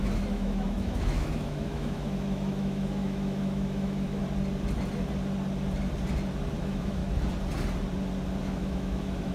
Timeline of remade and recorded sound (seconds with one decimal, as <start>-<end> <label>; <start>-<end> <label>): 0.0-4.2 remade; 4.2-6.6 recorded; 6.6-7.0 remade; 7.0-8.4 recorded; 8.4-9.3 remade